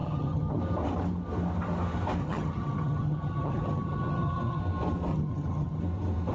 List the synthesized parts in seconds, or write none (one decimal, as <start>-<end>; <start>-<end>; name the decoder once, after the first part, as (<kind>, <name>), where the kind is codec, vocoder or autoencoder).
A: 0.0-0.6 (vocoder, HiFi-GAN); 2.2-4.6; 5.1-5.8